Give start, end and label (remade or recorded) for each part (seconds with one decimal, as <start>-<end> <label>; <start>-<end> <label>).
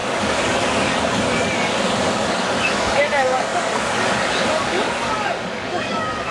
0.0-6.3 remade